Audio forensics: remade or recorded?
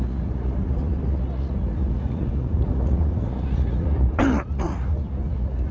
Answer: remade